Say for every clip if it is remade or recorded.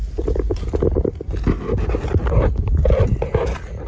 recorded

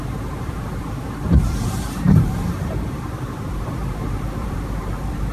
remade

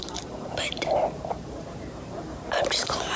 remade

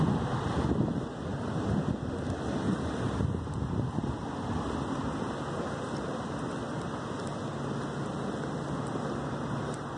recorded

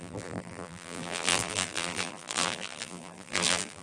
remade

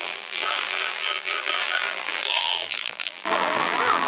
remade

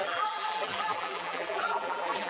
remade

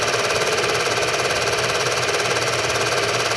remade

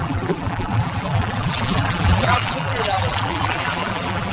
remade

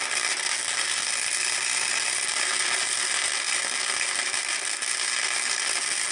recorded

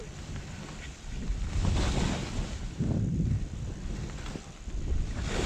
recorded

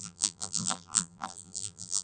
remade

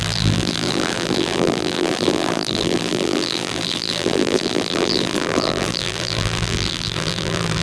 remade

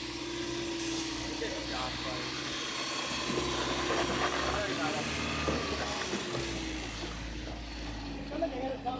recorded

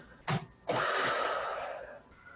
recorded